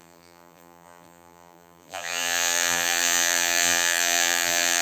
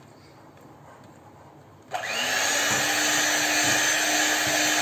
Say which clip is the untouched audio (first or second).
second